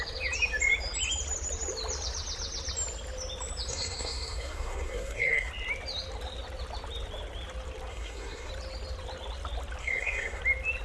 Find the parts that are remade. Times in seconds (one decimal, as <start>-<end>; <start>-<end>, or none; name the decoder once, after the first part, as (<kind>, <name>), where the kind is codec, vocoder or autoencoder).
3.7-5.5 (codec, SNAC); 7.9-8.5; 9.8-10.4

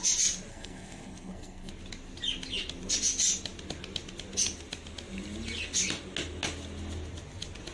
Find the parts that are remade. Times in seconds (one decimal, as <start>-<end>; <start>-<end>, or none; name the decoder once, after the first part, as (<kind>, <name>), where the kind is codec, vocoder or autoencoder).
0.5-1.7 (codec, SNAC)